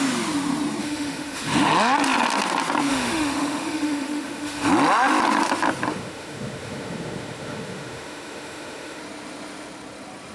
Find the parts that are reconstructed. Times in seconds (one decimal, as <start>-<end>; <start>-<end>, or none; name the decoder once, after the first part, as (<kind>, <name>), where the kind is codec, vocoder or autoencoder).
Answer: 0.8-1.7 (autoencoder, DAC-VAE); 2.9-4.7; 5.9-9.0